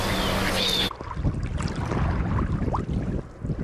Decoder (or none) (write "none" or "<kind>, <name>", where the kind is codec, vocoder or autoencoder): none